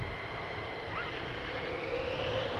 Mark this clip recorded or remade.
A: recorded